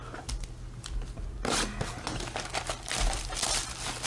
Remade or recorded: recorded